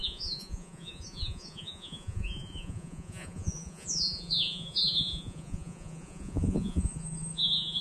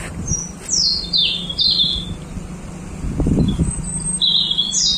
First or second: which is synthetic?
first